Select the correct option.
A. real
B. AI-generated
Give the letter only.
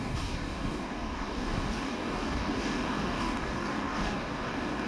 B